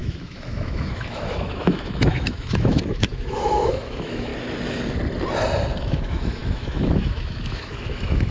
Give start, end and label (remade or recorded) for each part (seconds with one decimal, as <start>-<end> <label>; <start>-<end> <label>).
0.0-4.3 remade; 4.3-5.8 recorded; 5.8-8.3 remade